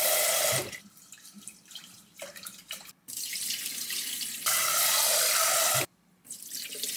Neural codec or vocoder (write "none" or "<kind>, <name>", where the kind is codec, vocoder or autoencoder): vocoder, BigVGAN v2